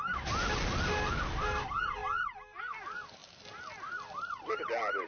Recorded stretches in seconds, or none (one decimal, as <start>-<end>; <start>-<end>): 0.0-5.1